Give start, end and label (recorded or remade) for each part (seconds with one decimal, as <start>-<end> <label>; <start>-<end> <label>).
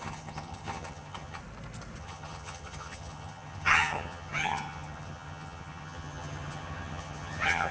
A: 0.0-1.4 remade; 1.4-2.0 recorded; 2.0-7.7 remade